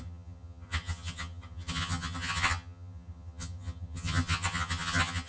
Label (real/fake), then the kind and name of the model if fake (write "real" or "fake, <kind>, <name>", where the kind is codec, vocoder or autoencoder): fake, vocoder, HiFi-GAN